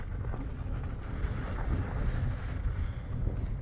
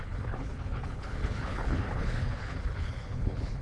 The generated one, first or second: second